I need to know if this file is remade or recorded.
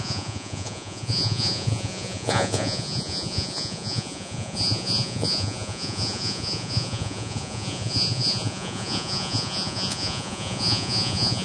remade